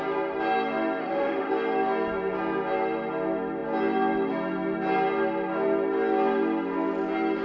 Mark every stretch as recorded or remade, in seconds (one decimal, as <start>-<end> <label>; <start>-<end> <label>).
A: 0.0-1.0 recorded; 1.0-1.5 remade; 1.5-7.4 recorded